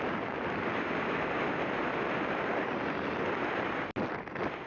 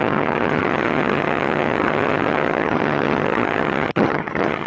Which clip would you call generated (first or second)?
second